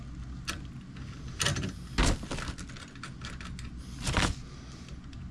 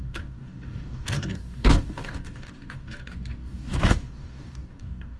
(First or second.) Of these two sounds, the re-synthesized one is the second